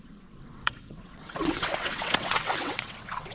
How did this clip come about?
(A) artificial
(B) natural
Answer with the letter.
A